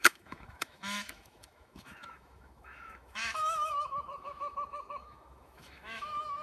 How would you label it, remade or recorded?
remade